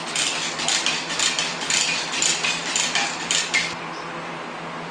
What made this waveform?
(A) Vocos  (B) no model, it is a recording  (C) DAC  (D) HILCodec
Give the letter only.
B